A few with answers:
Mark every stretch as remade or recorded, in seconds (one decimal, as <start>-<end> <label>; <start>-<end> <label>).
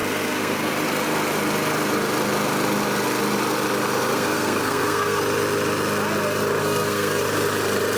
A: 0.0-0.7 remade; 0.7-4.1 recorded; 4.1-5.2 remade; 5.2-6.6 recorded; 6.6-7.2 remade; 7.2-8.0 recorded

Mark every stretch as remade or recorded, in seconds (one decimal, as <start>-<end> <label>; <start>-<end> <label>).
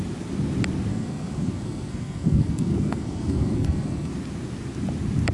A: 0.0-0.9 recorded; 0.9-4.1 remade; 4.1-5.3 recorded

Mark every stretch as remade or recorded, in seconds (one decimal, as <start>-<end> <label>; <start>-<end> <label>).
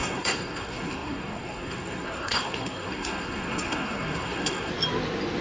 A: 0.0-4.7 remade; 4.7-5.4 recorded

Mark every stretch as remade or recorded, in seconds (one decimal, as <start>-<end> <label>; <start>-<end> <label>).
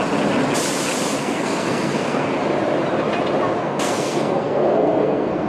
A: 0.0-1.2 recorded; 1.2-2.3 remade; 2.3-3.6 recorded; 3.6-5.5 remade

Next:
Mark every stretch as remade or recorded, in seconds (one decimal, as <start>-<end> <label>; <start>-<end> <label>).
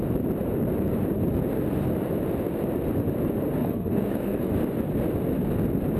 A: 0.0-3.6 recorded; 3.6-4.5 remade; 4.5-6.0 recorded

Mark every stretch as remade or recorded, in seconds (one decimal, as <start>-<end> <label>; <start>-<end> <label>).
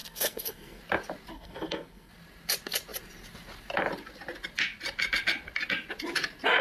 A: 0.0-0.8 remade; 0.8-1.3 recorded; 1.3-2.1 remade; 2.1-6.6 recorded